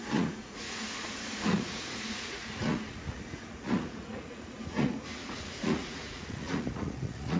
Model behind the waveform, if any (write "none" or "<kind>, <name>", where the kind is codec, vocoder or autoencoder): vocoder, Vocos